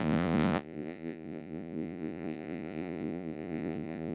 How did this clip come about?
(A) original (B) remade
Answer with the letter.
B